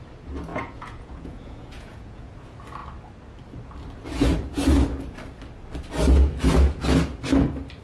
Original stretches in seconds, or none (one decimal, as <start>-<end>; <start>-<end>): 0.0-0.5; 2.3-7.8